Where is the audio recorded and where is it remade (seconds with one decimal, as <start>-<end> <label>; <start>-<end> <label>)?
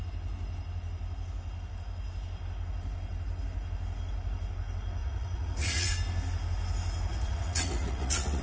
0.0-5.0 recorded; 5.0-5.9 remade; 5.9-7.1 recorded; 7.1-8.4 remade